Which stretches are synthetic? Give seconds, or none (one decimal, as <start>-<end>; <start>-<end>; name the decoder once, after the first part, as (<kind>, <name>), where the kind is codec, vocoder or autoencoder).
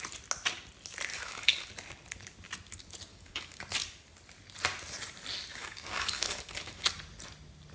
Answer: 1.1-1.7 (codec, DAC); 3.1-3.6; 5.5-6.9